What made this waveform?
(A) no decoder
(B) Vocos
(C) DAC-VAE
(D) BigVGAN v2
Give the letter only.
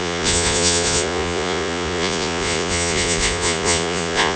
B